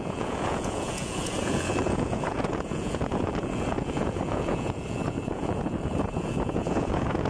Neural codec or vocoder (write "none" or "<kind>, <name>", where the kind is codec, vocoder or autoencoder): vocoder, Vocos